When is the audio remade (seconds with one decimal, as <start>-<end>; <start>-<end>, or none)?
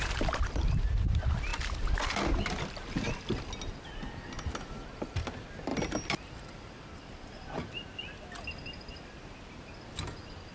none